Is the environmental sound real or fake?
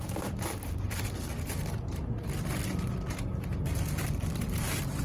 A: fake